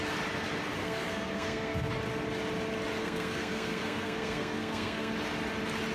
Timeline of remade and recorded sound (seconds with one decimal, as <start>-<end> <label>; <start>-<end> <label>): 0.0-0.8 recorded; 0.8-1.9 remade; 1.9-3.0 recorded; 3.0-5.1 remade; 5.1-5.9 recorded